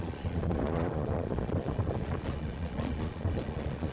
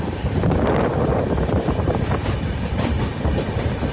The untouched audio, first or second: second